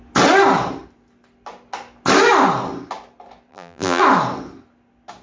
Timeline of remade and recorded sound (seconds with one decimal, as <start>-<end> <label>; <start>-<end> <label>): 0.0-3.5 recorded; 3.5-4.0 remade; 4.0-5.2 recorded